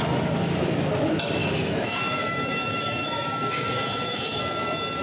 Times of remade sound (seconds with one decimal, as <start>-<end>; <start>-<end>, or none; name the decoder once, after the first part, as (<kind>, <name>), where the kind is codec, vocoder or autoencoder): 1.4-4.4 (autoencoder, DAC-VAE)